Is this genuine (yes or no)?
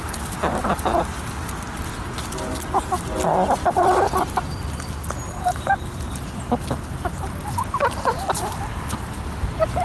yes